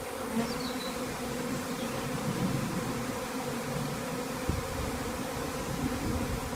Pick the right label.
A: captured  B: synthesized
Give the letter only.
A